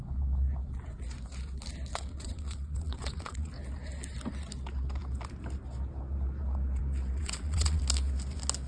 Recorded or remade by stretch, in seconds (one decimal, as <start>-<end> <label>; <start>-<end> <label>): 0.0-1.9 recorded; 1.9-3.5 remade; 3.5-7.2 recorded; 7.2-7.8 remade; 7.8-8.7 recorded